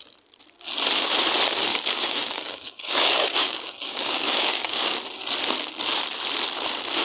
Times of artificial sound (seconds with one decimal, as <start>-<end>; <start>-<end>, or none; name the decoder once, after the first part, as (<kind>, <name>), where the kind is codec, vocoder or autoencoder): 1.7-5.0 (codec, DAC)

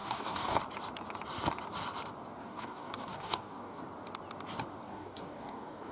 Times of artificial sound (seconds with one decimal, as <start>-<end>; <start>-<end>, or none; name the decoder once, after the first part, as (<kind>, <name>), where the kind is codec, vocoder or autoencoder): 0.0-0.6 (codec, DAC); 2.4-3.8; 4.8-5.9

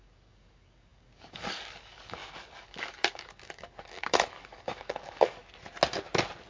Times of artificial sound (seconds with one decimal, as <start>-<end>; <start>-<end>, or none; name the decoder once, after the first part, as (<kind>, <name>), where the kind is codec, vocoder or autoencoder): 0.0-5.4 (codec, DAC)

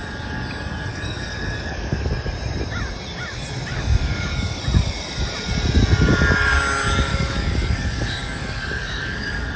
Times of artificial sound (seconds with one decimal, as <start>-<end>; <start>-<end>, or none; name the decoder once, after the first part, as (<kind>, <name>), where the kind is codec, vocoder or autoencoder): 0.9-2.1 (codec, DAC); 3.7-4.6; 7.1-9.6

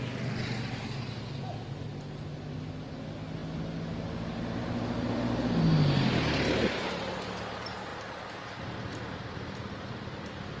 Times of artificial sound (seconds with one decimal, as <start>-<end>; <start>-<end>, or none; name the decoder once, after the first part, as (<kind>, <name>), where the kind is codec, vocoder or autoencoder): none

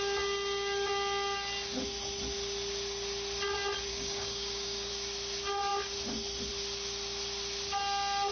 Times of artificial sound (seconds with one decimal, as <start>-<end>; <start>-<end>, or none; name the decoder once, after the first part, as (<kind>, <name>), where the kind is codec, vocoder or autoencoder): 3.9-4.9 (codec, DAC)

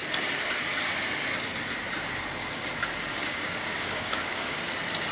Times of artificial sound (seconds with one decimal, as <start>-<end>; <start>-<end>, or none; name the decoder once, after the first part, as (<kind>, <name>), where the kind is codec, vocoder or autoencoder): 3.1-4.6 (codec, DAC)